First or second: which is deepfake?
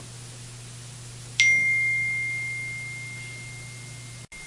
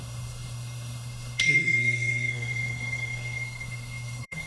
second